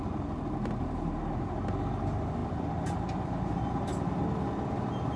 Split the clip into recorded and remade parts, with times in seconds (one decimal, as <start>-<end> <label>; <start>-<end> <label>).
0.0-5.2 recorded